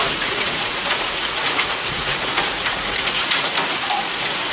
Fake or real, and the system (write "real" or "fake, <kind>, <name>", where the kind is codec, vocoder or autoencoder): fake, vocoder, Vocos